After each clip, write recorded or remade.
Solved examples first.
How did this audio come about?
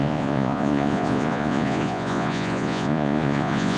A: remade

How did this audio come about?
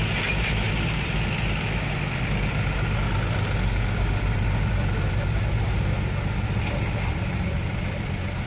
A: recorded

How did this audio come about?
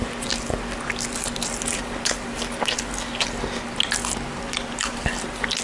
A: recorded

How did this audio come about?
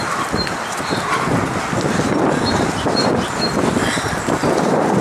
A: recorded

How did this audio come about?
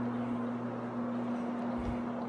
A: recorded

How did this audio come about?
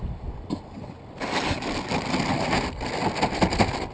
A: recorded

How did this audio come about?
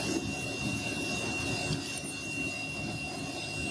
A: recorded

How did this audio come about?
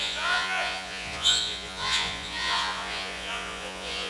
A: remade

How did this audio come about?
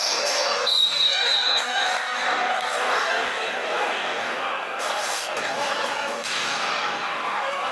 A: remade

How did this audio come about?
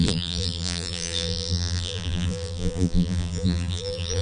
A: remade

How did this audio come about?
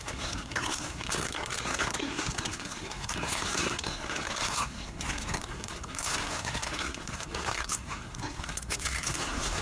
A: remade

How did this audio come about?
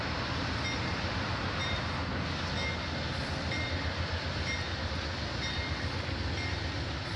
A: recorded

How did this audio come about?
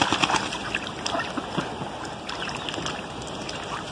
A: recorded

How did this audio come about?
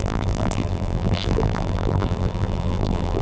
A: remade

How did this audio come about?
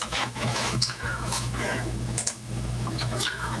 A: remade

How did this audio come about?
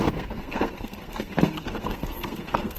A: remade